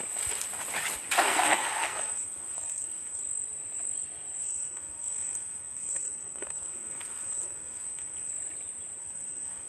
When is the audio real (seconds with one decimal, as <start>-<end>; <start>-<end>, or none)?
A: 0.0-1.2; 3.2-4.4; 8.3-9.0